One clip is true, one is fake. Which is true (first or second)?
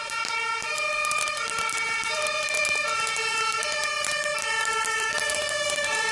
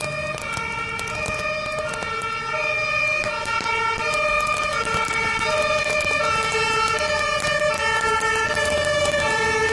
second